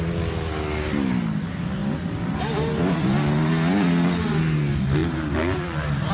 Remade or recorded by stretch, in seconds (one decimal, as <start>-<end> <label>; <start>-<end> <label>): 0.0-6.1 recorded